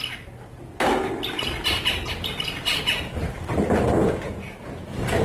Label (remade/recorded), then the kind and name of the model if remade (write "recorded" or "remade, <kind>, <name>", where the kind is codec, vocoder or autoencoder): recorded